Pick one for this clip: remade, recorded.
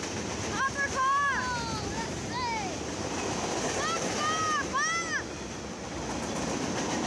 recorded